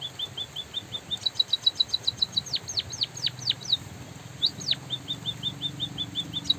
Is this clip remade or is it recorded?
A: recorded